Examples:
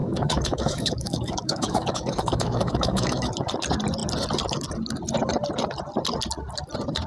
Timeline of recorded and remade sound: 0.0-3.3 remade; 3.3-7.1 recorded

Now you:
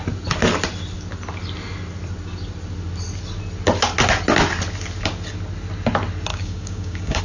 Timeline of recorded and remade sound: 0.0-6.3 recorded; 6.3-7.2 remade

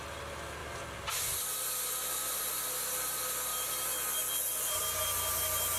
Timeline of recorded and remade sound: 0.0-5.8 recorded

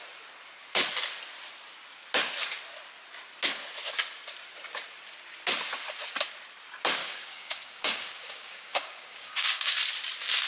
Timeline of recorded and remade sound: 0.0-7.0 recorded; 7.0-9.8 remade; 9.8-10.5 recorded

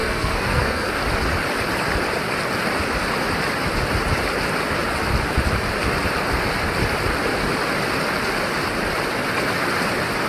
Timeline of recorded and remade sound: 0.0-0.9 remade; 0.9-10.3 recorded

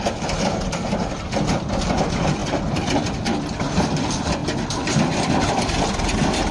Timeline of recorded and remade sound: 0.0-2.4 remade; 2.4-3.0 recorded; 3.0-6.5 remade

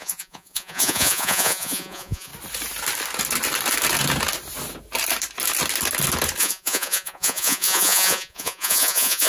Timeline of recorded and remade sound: 0.0-2.3 remade; 2.3-6.4 recorded; 6.4-9.3 remade